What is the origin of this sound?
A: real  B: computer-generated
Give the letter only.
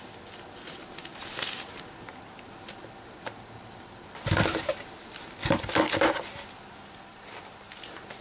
A